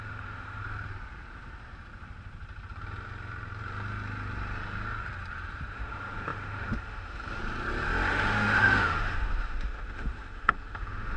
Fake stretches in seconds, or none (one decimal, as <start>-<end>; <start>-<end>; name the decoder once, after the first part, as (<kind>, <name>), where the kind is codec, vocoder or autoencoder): 0.0-0.6 (autoencoder, DAC-VAE); 5.7-7.4; 8.1-11.2